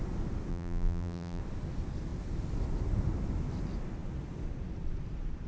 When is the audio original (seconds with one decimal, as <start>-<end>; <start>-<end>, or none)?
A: 0.0-0.5; 1.4-5.5